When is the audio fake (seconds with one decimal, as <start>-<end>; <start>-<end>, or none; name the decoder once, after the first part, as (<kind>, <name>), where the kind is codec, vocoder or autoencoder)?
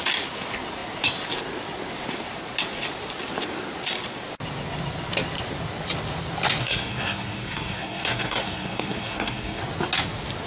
6.6-9.6 (codec, SNAC)